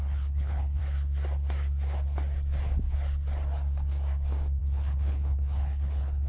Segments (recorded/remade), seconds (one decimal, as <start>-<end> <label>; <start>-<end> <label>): 0.0-0.8 remade; 0.8-4.6 recorded; 4.6-6.3 remade